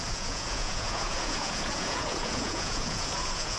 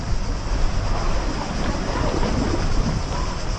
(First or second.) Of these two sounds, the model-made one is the first